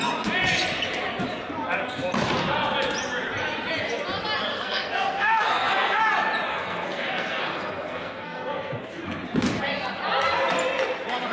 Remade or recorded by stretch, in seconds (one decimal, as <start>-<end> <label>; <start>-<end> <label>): 0.0-4.5 recorded; 4.5-6.0 remade; 6.0-6.5 recorded; 6.5-9.0 remade; 9.0-11.3 recorded